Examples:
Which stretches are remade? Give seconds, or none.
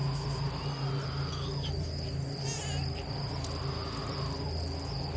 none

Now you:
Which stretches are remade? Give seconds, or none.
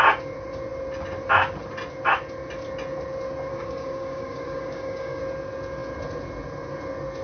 3.5-5.2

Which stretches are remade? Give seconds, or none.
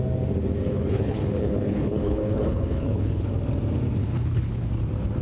0.7-3.3; 4.0-4.7